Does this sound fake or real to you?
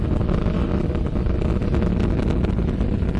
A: real